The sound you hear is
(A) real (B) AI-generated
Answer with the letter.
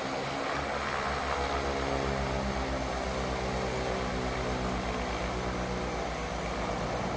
A